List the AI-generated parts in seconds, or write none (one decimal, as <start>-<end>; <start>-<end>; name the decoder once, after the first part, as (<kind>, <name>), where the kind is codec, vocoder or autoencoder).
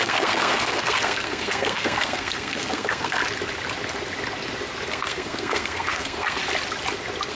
0.0-3.2 (codec, SNAC); 4.9-6.4